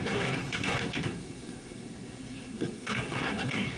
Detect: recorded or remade remade